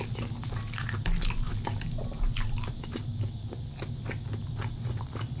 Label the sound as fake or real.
real